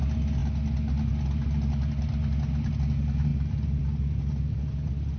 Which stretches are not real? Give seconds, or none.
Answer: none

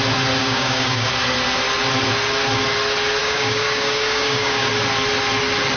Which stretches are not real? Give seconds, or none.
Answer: 0.4-1.1 (codec, DAC); 3.2-4.7

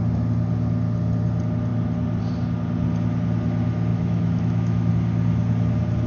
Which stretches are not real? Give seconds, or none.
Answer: 3.9-4.9 (autoencoder, DAC-VAE)